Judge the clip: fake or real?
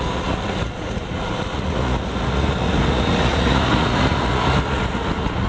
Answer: fake